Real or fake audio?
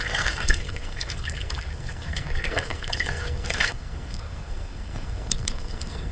fake